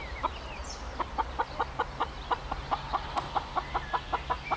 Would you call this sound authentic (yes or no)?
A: yes